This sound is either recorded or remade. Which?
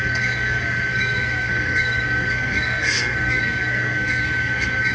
remade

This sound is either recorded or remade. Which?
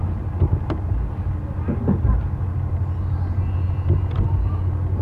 recorded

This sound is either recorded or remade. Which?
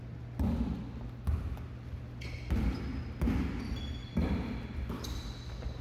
recorded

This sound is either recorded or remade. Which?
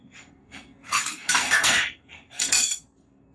remade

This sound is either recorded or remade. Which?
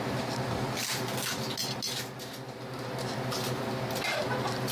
recorded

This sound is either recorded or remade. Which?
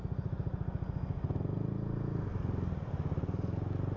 recorded